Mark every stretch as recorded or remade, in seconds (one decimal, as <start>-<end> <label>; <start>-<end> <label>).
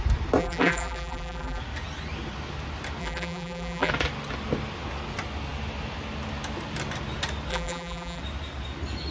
0.0-0.4 recorded; 0.4-1.6 remade; 1.6-3.0 recorded; 3.0-3.9 remade; 3.9-7.5 recorded; 7.5-8.2 remade; 8.2-9.1 recorded